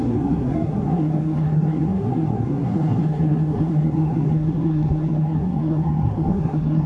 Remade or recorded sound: remade